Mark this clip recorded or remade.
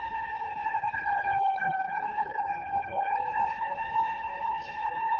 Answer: remade